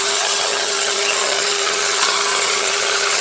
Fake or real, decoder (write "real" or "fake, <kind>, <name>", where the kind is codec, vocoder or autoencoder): fake, vocoder, HiFi-GAN